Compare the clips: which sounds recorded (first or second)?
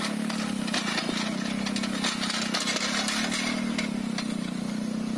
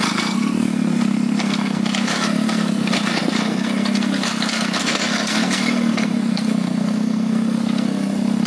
first